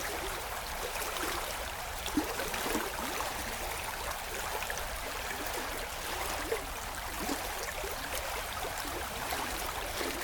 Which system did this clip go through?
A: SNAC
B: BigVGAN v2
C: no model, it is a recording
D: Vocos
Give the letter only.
B